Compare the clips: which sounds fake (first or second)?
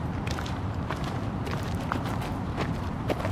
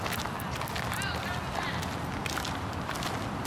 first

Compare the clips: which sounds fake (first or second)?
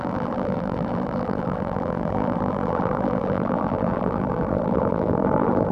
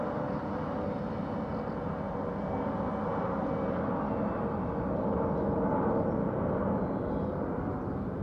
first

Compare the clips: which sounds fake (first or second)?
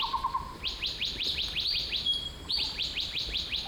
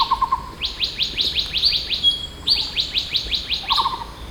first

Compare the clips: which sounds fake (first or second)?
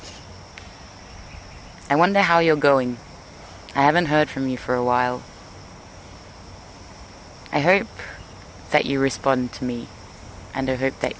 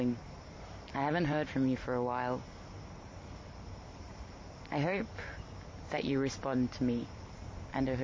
second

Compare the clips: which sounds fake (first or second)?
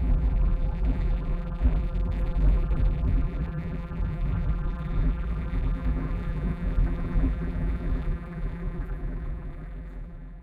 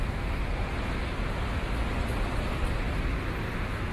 first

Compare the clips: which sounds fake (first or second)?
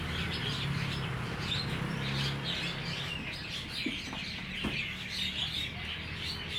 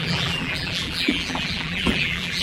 second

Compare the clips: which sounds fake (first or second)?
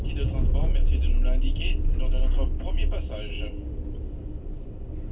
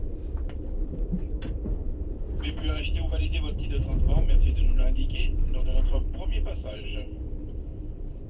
second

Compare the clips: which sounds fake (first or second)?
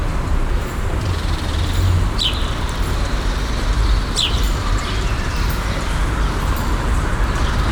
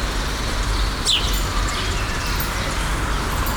first